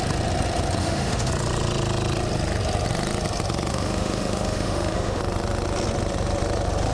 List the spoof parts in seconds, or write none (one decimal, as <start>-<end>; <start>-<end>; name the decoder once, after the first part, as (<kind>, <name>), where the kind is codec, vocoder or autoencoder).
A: 0.8-1.3 (autoencoder, DAC-VAE); 3.7-5.2